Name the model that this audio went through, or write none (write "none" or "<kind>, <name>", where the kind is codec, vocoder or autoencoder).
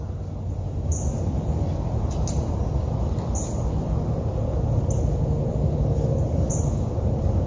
none